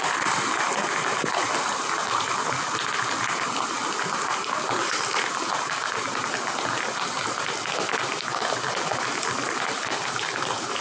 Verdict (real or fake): real